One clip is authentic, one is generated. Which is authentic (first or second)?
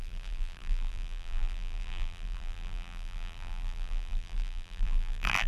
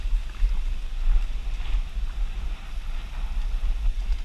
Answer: second